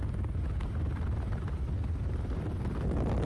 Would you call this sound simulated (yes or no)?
no